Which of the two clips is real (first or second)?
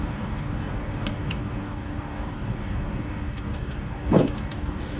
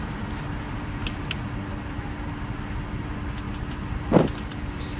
second